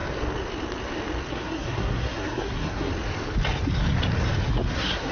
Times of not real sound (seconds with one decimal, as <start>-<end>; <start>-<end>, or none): 1.3-2.9; 4.5-5.1